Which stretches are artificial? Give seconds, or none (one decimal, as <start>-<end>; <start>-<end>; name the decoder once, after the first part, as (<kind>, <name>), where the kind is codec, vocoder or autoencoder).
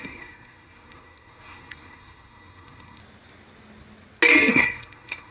0.0-3.0 (codec, SNAC); 4.5-5.3